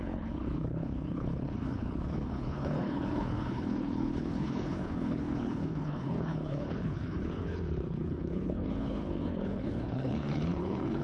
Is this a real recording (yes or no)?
no